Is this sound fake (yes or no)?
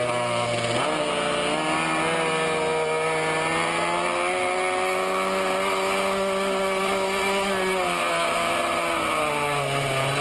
no